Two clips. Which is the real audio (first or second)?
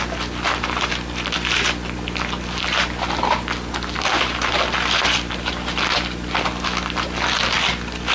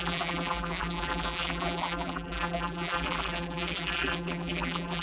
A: first